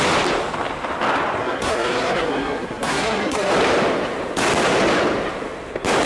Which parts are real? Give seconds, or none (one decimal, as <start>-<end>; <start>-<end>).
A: 0.0-1.4; 3.5-6.1